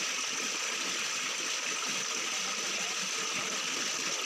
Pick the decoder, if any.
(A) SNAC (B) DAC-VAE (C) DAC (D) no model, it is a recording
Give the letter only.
D